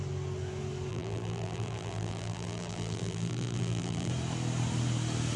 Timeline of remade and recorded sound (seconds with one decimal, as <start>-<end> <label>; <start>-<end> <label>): 0.0-0.9 recorded; 0.9-4.1 remade; 4.1-5.4 recorded